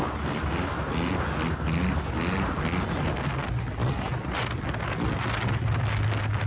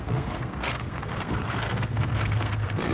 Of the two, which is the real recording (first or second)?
first